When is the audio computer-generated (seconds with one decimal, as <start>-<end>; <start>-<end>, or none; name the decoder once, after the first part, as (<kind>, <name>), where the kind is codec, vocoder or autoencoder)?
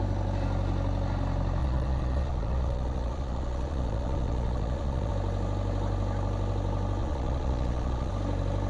1.6-5.1 (vocoder, Vocos); 7.0-8.1